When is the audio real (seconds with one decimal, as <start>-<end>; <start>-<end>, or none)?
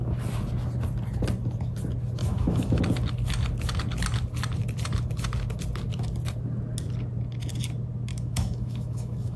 0.0-2.2; 2.8-8.1